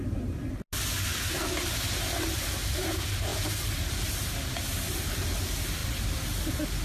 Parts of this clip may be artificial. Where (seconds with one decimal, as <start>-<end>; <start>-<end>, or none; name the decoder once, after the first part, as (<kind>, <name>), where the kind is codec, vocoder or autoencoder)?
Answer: 3.3-4.1 (vocoder, BigVGAN v2)